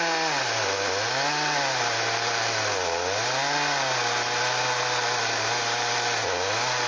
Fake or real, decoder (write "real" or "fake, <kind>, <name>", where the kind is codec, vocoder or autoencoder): real